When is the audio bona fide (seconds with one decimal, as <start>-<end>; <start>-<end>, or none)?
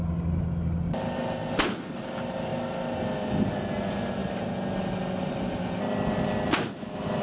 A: 0.0-7.2